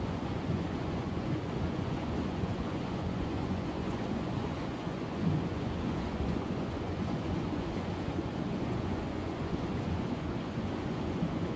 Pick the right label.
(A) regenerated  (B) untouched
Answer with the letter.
A